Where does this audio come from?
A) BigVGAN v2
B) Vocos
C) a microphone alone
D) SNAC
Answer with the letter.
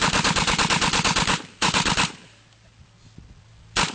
C